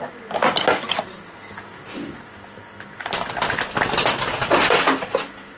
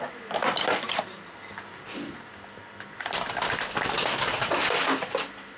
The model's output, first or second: second